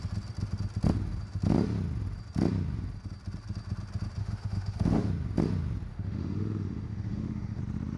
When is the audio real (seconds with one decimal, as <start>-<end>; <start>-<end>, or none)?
0.0-4.2; 5.1-5.9; 7.6-8.0